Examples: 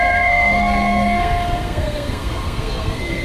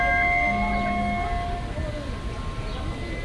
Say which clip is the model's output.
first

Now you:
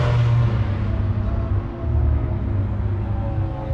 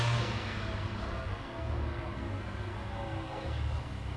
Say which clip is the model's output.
second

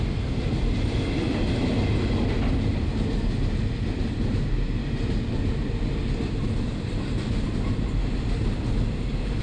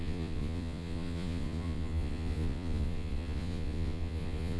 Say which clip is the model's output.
second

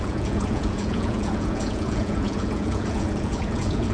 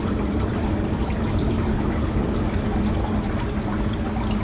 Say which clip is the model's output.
first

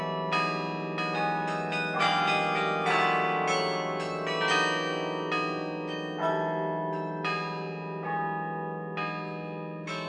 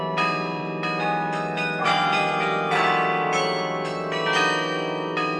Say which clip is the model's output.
second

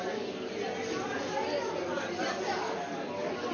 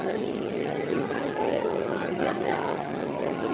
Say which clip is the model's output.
second